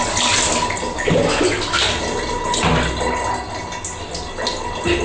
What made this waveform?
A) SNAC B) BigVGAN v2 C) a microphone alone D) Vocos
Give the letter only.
C